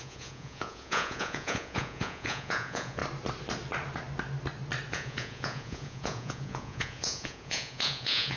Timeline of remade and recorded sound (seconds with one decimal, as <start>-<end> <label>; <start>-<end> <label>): 0.0-3.0 remade; 3.0-4.9 recorded; 4.9-8.4 remade